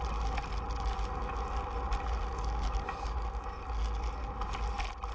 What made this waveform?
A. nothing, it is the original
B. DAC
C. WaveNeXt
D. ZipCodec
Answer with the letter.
A